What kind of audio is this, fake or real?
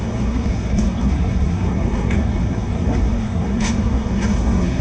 fake